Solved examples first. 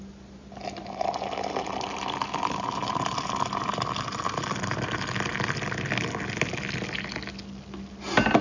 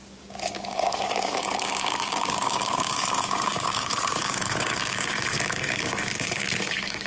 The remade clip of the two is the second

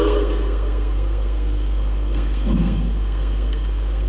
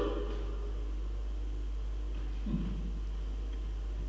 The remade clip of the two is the first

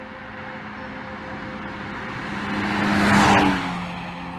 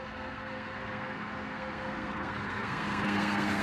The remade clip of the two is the second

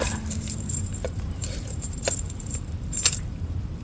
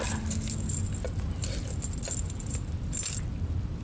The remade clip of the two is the first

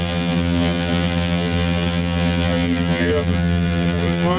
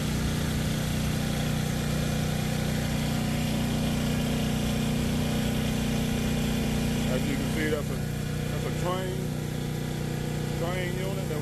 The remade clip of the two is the first